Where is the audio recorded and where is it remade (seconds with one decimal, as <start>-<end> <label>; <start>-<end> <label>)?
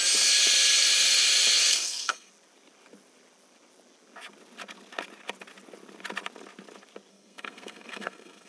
0.0-1.7 recorded; 1.7-2.3 remade; 2.3-7.1 recorded; 7.1-8.5 remade